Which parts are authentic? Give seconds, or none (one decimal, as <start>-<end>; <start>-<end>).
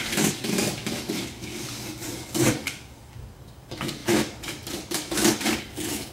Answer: none